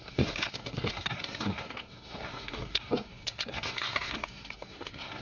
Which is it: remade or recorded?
remade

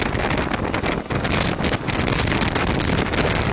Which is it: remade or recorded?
recorded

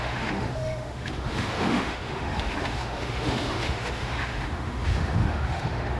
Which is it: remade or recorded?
remade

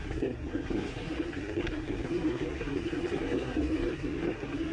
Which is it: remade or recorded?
remade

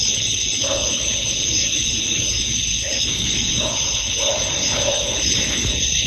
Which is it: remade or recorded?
remade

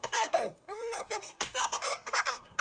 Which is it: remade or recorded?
remade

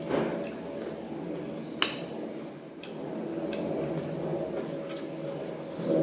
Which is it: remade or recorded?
recorded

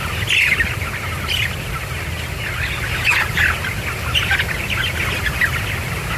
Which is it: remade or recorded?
recorded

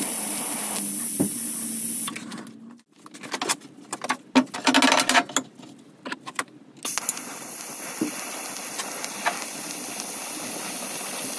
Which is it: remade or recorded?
recorded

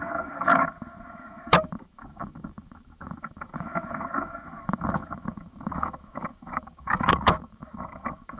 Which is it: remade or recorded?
remade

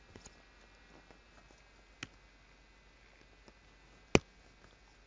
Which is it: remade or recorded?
recorded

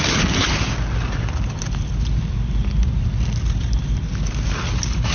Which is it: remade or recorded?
recorded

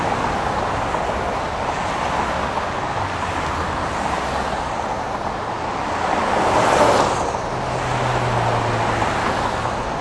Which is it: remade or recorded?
recorded